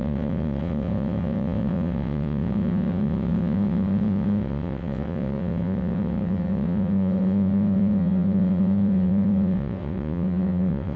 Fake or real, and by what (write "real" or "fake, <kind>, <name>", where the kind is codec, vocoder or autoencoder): fake, vocoder, WaveNeXt